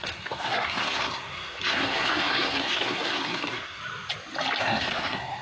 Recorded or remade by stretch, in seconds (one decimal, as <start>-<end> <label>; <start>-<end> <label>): 0.0-3.8 remade; 3.8-4.6 recorded; 4.6-5.4 remade

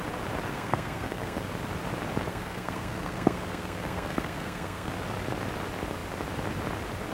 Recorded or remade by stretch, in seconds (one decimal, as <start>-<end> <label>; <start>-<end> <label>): 0.0-0.5 recorded; 0.5-1.5 remade; 1.5-2.3 recorded; 2.3-4.9 remade; 4.9-7.1 recorded

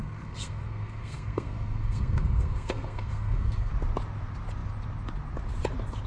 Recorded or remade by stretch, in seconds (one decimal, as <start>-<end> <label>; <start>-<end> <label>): 0.0-3.7 remade; 3.7-6.1 recorded